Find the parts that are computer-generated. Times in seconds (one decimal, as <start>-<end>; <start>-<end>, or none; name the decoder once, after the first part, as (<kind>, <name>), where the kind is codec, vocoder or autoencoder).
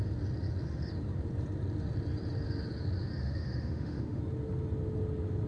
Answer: 3.2-4.2 (autoencoder, DAC-VAE)